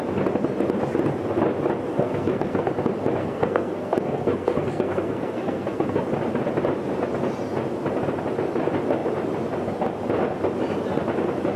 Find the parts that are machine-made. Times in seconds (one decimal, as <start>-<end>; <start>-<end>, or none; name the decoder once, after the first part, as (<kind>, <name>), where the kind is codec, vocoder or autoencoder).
1.9-2.7 (codec, SNAC); 3.2-6.0